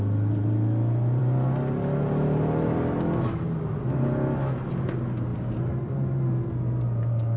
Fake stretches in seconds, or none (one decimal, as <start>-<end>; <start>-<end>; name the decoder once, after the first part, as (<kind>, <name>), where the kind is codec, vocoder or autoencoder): none

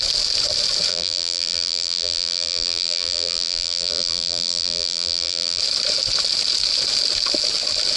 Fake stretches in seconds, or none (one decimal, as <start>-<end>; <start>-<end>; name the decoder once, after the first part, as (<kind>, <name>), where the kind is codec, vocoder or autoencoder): 0.9-5.6 (vocoder, BigVGAN v2)

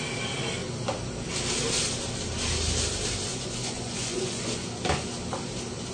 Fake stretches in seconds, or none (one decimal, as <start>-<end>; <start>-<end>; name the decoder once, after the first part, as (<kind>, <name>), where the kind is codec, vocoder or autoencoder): 3.3-4.7 (vocoder, Vocos)